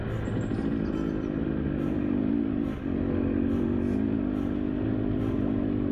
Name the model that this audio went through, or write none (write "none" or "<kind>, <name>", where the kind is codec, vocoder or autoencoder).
none